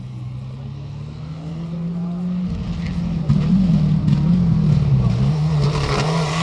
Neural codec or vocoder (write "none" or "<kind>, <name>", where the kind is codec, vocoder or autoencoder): none